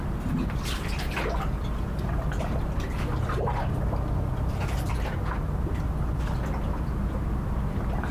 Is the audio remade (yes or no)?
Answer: no